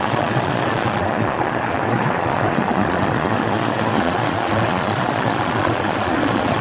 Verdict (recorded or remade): remade